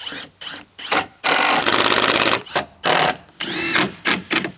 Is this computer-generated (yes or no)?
no